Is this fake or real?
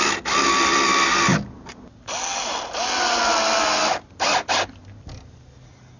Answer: real